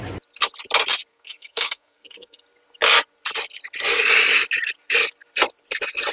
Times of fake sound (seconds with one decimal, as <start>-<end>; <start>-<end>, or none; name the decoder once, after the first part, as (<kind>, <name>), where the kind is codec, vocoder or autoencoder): 1.1-2.4 (codec, SNAC)